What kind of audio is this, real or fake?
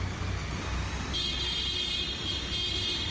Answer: real